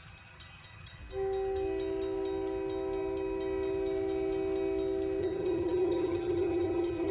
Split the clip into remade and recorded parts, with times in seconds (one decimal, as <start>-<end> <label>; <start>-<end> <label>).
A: 0.0-1.0 remade; 1.0-5.2 recorded; 5.2-7.1 remade

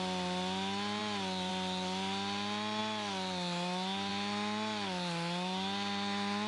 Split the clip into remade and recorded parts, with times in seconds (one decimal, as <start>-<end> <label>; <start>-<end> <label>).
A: 0.0-6.5 recorded

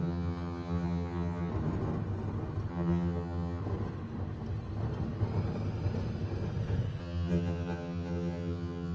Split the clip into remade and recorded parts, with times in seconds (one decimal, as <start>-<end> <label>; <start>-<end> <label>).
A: 0.0-1.5 remade; 1.5-2.7 recorded; 2.7-3.6 remade; 3.6-7.0 recorded; 7.0-8.9 remade

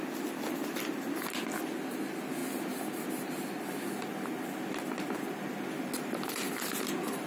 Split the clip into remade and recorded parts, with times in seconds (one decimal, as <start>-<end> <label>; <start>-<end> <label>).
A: 0.0-2.4 remade; 2.4-6.8 recorded; 6.8-7.3 remade

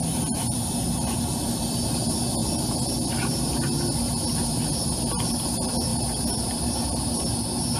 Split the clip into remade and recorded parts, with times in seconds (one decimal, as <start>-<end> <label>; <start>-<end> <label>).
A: 0.0-7.8 recorded

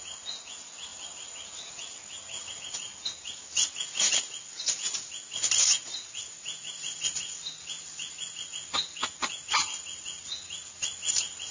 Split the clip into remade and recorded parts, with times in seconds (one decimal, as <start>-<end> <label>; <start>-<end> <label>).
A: 0.0-11.5 recorded

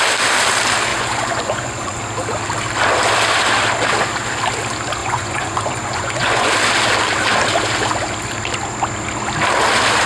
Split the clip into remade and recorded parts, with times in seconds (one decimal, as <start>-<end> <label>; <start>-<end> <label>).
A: 0.0-0.9 recorded; 0.9-2.0 remade; 2.0-5.0 recorded; 5.0-6.5 remade; 6.5-10.1 recorded